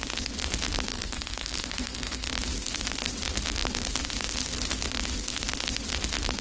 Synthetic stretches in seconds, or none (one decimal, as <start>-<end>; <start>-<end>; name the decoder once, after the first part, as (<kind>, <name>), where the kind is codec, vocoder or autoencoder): 0.9-2.3 (codec, SNAC)

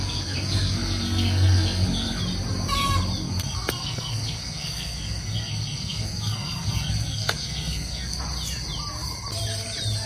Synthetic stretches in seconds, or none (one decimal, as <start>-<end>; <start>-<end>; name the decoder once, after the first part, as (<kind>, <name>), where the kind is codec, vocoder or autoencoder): 0.0-2.2 (codec, SNAC); 3.2-8.2

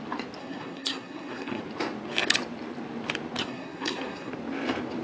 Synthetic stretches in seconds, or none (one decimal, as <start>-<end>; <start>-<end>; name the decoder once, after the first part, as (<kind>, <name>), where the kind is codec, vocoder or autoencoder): 0.4-1.6 (codec, SNAC); 3.4-4.3

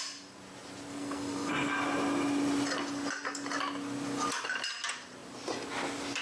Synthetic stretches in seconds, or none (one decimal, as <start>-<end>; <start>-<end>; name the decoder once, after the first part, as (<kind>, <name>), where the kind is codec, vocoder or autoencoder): 0.9-1.5 (codec, SNAC)